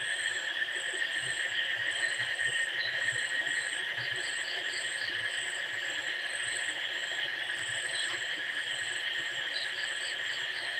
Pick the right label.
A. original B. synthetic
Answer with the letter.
A